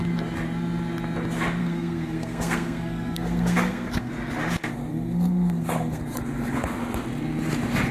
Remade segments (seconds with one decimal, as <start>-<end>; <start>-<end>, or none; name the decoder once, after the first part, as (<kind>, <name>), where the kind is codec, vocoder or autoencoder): 1.6-4.1 (codec, SNAC); 4.9-6.0